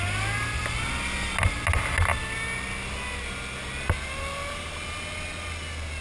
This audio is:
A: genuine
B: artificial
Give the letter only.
A